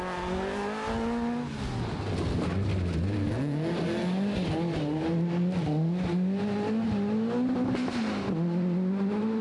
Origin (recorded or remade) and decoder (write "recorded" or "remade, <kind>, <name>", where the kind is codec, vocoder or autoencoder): recorded